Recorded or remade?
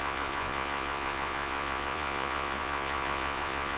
remade